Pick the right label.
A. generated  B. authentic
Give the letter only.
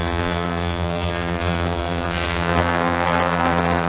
A